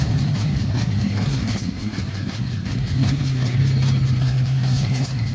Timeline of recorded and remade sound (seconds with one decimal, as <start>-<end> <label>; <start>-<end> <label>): 0.0-3.6 remade; 3.6-4.2 recorded; 4.2-5.3 remade